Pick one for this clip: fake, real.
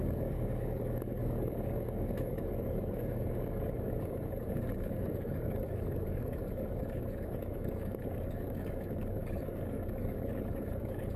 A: fake